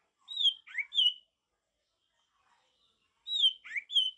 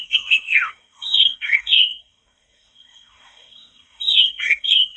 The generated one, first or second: second